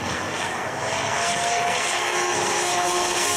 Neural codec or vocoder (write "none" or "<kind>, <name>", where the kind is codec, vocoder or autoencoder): codec, SNAC